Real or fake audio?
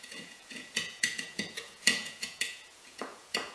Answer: fake